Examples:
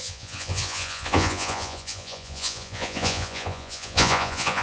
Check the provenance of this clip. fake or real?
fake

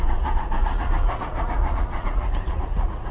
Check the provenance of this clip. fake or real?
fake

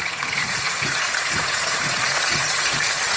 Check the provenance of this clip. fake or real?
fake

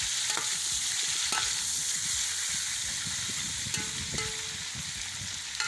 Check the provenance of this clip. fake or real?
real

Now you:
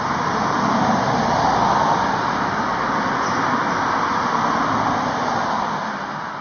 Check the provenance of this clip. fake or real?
real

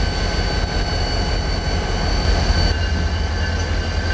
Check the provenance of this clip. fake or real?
real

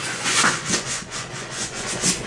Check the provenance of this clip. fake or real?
fake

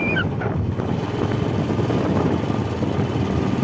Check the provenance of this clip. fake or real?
real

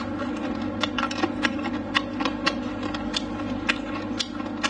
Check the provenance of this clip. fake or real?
real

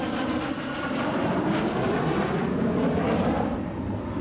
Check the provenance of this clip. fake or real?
real